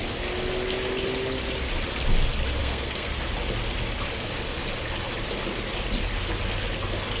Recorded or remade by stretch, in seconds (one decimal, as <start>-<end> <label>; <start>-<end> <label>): 0.0-2.6 recorded; 2.6-3.2 remade; 3.2-7.2 recorded